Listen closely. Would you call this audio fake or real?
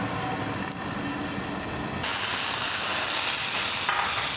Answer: real